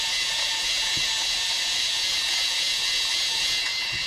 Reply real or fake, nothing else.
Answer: fake